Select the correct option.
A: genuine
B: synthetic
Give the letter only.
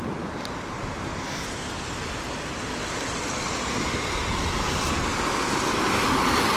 A